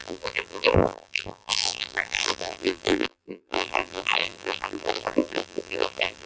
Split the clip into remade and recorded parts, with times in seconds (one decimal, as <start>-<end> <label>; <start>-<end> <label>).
0.0-6.3 remade